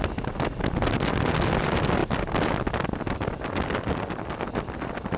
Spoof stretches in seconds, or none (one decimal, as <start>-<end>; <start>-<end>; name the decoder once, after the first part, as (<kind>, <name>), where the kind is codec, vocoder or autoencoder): none